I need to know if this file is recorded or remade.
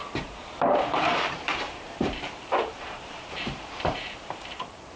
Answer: remade